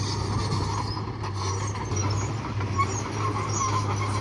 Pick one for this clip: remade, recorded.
recorded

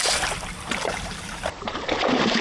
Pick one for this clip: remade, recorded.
remade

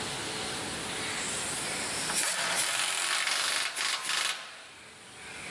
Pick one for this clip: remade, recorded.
recorded